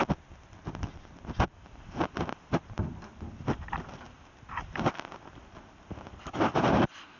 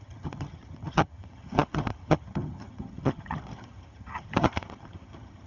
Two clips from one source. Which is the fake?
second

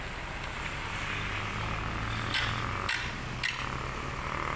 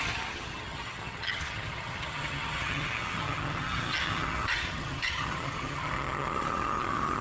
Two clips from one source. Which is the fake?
second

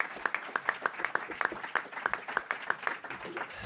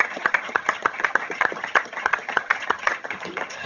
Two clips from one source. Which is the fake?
second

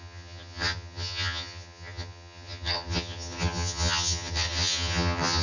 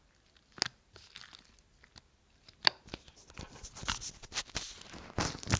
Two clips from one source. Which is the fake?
first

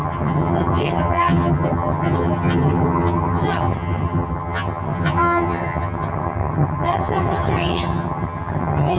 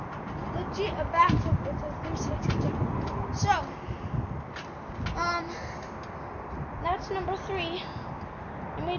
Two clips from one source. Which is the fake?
first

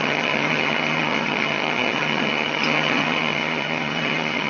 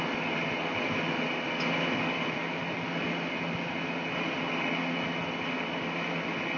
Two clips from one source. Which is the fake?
first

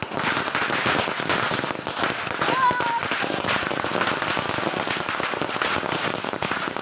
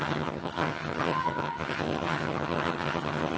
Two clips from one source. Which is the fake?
second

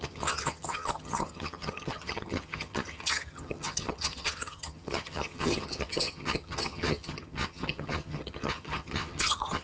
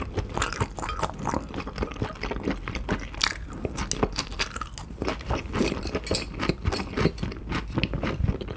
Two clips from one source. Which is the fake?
first